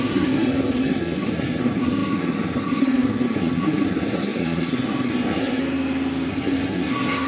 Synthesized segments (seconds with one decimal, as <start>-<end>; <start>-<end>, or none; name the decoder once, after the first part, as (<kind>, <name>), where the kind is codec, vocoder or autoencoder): 0.0-5.6 (codec, SNAC); 6.3-7.3